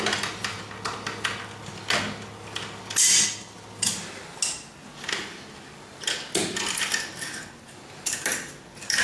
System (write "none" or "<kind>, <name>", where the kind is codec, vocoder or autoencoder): none